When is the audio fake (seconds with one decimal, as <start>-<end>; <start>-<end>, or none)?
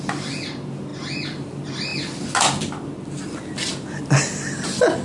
none